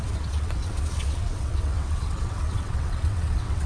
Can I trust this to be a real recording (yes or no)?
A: no